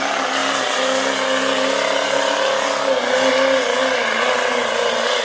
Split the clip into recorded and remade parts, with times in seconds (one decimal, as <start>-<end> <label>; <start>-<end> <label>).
0.0-5.2 recorded